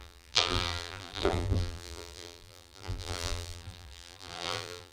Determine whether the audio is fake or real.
fake